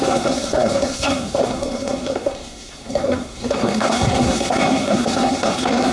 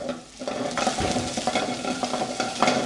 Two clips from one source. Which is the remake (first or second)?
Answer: first